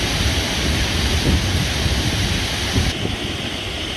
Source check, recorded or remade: recorded